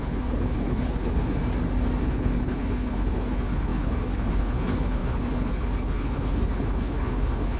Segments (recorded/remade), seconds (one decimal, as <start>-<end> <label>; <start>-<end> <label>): 0.0-1.4 remade; 1.4-2.0 recorded; 2.0-7.6 remade